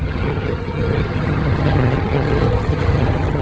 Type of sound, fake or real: fake